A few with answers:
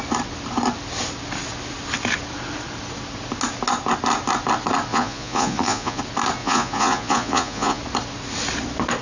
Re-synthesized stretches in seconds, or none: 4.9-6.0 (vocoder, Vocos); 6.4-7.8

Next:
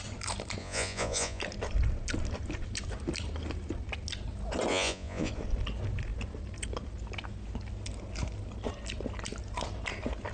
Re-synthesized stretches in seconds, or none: 0.6-1.4 (vocoder, Vocos); 4.7-5.3

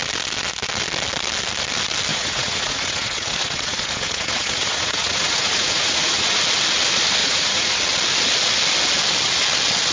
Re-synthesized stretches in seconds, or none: 2.1-6.4 (vocoder, Vocos); 7.2-7.8

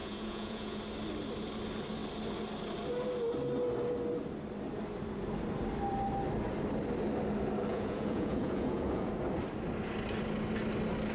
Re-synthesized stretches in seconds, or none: 0.0-0.8 (vocoder, Vocos); 7.7-9.1

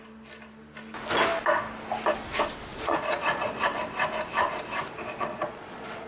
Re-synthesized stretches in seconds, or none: 2.7-3.6 (vocoder, Vocos); 5.3-6.1

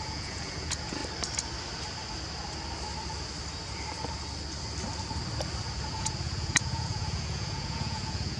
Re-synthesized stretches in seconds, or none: 0.0-1.0 (vocoder, Vocos); 5.9-8.4